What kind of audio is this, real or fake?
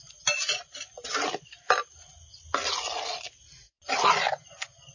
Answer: real